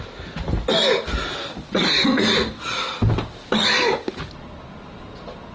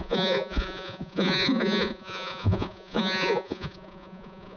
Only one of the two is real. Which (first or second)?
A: first